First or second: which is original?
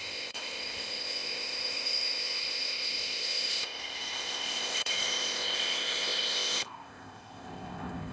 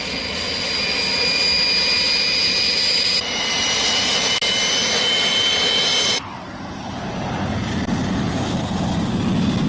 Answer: second